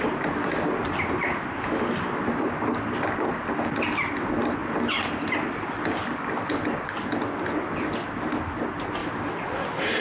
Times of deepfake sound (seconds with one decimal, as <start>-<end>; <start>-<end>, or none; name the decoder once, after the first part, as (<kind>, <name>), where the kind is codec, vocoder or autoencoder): 9.0-9.6 (vocoder, BigVGAN v2)